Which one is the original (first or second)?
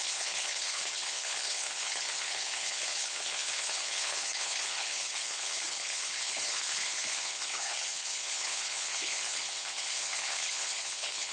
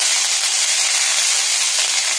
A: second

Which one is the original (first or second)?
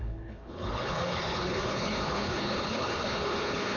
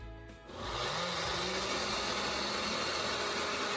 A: second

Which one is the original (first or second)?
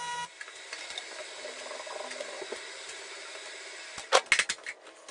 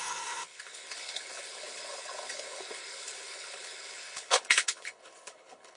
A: first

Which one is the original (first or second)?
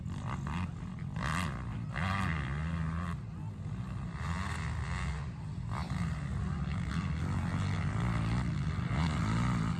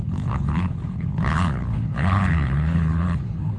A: first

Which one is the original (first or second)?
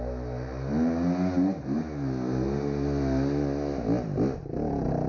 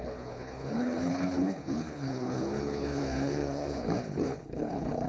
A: first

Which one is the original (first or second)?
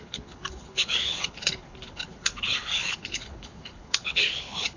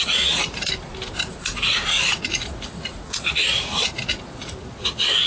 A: second